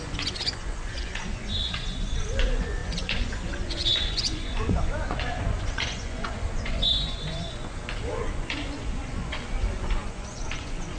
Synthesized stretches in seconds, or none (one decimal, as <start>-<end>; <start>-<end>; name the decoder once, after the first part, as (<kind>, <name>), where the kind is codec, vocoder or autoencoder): 0.0-11.0 (vocoder, Vocos)